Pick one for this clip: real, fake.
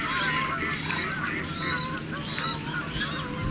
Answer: real